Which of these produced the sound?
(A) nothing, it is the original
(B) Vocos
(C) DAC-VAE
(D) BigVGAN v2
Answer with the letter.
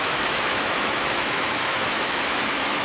C